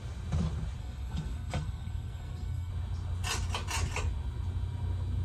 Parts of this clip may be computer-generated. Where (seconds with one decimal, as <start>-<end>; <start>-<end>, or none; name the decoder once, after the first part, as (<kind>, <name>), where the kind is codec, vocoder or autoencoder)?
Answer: 0.8-2.7 (codec, SNAC)